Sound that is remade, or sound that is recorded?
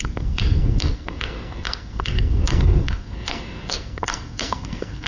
remade